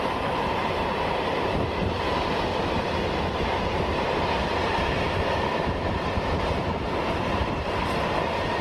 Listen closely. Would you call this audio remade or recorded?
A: remade